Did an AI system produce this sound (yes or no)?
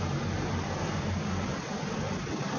no